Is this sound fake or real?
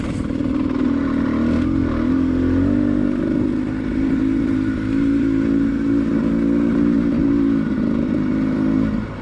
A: real